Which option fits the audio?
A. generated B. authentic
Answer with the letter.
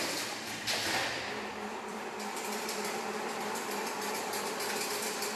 A